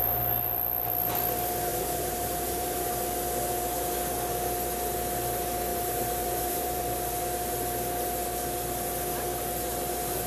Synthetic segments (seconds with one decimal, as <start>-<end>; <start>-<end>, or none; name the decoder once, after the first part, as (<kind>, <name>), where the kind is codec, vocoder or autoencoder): 1.7-2.9 (vocoder, BigVGAN v2); 5.7-6.8